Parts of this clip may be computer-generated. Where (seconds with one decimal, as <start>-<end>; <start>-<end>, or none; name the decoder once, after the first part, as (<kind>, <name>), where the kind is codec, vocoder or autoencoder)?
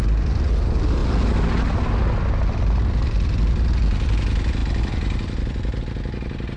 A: none